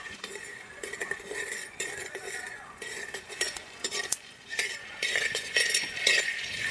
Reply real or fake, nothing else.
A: fake